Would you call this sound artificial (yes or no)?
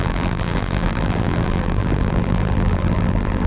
yes